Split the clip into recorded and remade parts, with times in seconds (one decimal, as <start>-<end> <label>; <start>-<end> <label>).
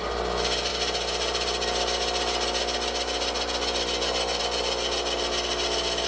0.0-6.1 recorded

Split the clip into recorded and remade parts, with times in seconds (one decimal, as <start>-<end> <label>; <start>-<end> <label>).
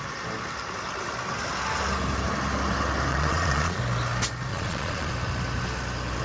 0.0-3.1 recorded; 3.1-3.8 remade; 3.8-4.5 recorded; 4.5-5.1 remade; 5.1-6.2 recorded